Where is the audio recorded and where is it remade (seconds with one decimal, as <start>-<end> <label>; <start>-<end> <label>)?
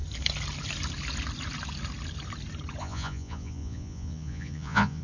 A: 0.0-2.8 recorded; 2.8-5.0 remade